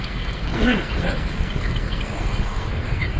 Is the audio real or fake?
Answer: fake